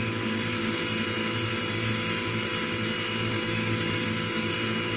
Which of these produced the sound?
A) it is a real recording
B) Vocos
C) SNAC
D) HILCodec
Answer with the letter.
A